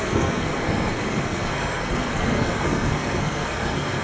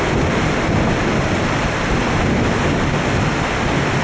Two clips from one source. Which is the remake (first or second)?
first